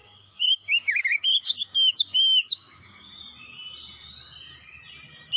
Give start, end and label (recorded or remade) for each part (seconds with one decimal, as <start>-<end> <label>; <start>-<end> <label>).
0.0-3.2 remade; 3.2-5.4 recorded